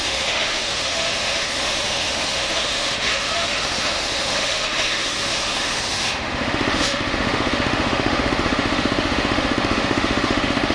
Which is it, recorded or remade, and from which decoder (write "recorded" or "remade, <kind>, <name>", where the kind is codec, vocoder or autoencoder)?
remade, autoencoder, DAC-VAE